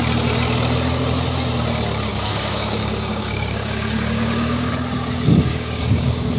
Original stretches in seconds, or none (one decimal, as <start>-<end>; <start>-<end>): 0.0-2.1; 4.7-5.5